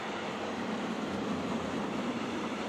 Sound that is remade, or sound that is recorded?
recorded